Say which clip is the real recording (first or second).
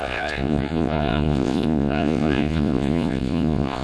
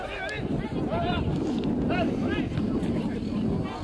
second